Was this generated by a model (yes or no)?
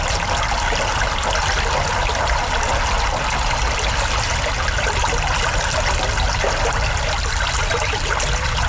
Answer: no